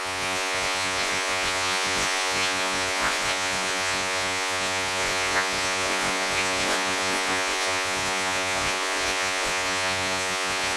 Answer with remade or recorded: remade